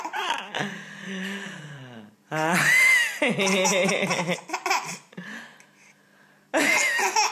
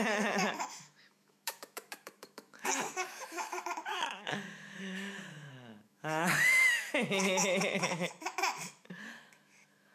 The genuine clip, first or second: first